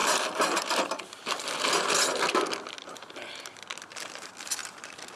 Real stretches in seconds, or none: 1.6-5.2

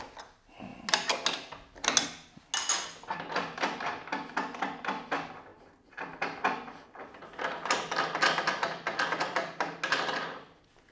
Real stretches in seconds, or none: 0.0-10.9